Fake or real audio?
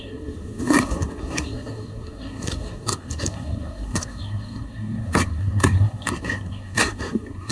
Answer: fake